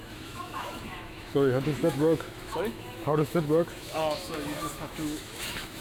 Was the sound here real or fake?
fake